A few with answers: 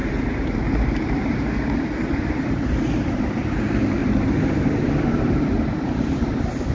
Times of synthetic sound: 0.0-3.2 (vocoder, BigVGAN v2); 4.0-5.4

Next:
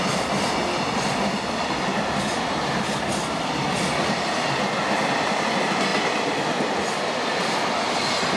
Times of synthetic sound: none

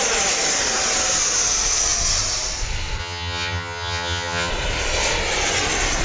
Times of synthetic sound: 3.0-4.5 (vocoder, HiFi-GAN)

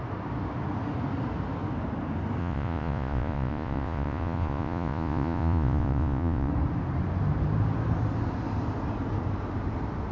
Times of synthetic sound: 2.4-6.5 (vocoder, Vocos)

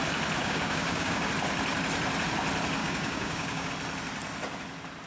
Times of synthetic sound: 0.4-1.3 (codec, DAC); 2.8-3.7

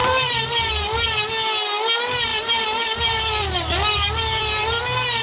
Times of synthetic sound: 0.0-0.8 (vocoder, BigVGAN v2); 2.3-4.8

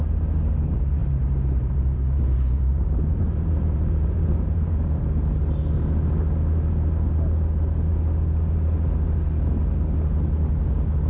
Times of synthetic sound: 1.0-5.0 (vocoder, BigVGAN v2)